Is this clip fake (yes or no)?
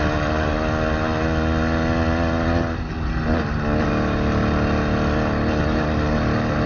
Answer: no